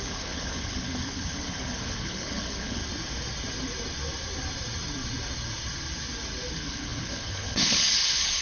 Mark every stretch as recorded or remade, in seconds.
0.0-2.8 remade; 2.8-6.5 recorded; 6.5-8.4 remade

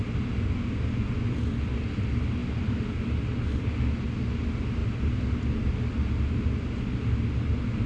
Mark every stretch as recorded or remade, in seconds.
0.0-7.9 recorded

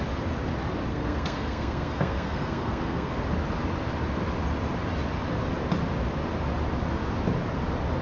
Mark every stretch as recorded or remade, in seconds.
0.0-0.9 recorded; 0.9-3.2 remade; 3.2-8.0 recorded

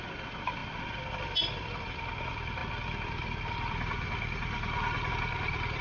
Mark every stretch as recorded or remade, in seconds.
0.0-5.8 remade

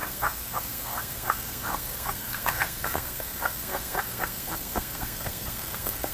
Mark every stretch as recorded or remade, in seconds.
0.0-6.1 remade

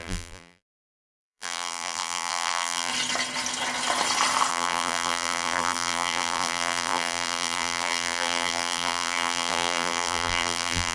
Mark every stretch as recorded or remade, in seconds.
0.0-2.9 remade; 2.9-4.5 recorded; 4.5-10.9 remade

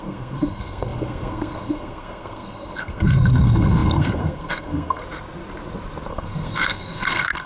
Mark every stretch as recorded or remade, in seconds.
0.0-5.0 remade; 5.0-6.1 recorded; 6.1-7.5 remade

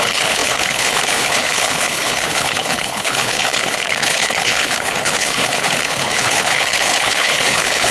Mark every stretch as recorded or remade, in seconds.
0.0-7.9 remade